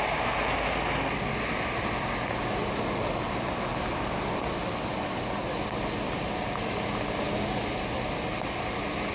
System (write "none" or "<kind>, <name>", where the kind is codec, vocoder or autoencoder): none